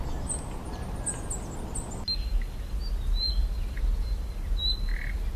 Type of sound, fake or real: real